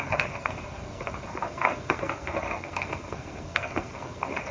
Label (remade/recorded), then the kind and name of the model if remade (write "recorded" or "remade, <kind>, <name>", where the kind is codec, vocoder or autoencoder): remade, codec, SNAC